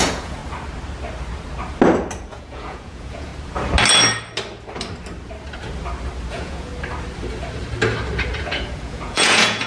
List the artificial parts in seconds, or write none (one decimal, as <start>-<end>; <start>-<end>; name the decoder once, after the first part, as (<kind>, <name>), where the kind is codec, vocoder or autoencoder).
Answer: 0.0-0.4 (vocoder, Vocos); 2.2-3.3; 6.3-6.7; 8.4-9.7